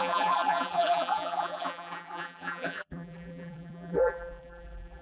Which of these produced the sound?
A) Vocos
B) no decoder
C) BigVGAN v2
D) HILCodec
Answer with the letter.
C